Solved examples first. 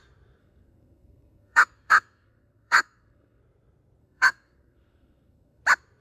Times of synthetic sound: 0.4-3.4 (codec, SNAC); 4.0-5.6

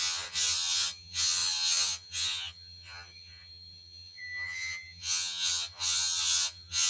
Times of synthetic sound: 0.0-6.9 (vocoder, HiFi-GAN)

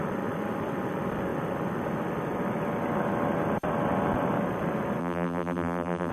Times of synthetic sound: 5.0-6.1 (vocoder, BigVGAN v2)

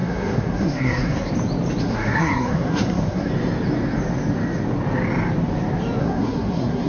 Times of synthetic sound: 0.0-1.3 (codec, SNAC); 1.8-3.3; 6.0-6.9

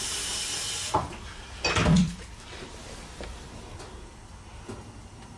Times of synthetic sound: 1.0-4.2 (vocoder, BigVGAN v2)